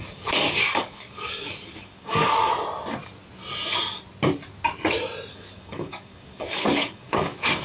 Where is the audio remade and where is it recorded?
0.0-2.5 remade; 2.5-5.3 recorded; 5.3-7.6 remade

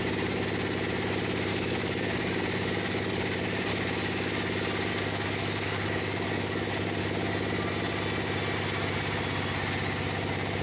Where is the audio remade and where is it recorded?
0.0-1.5 recorded; 1.5-3.7 remade; 3.7-4.9 recorded; 4.9-7.0 remade; 7.0-10.6 recorded

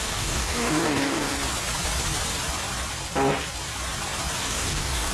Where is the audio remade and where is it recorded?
0.0-1.3 remade; 1.3-4.4 recorded; 4.4-5.1 remade

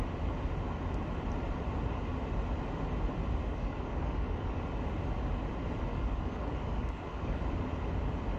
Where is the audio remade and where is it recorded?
0.0-3.4 recorded; 3.4-4.6 remade; 4.6-5.9 recorded; 5.9-7.4 remade; 7.4-8.4 recorded

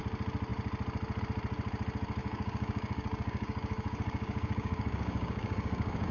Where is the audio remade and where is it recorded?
0.0-2.2 recorded; 2.2-6.1 remade

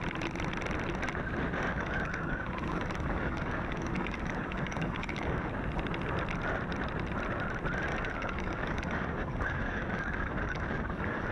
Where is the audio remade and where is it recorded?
0.0-1.7 recorded; 1.7-5.5 remade; 5.5-7.9 recorded; 7.9-11.3 remade

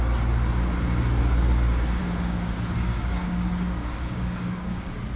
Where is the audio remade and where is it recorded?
0.0-2.0 recorded; 2.0-5.2 remade

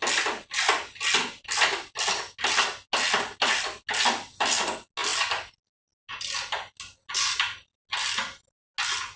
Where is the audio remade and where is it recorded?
0.0-9.2 recorded